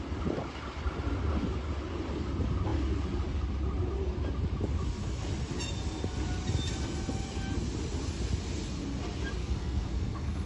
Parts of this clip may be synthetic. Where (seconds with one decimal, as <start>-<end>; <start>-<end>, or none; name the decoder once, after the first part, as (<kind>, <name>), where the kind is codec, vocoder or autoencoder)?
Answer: 9.4-10.5 (codec, SNAC)